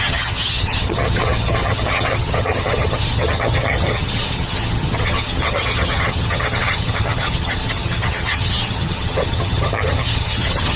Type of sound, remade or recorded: remade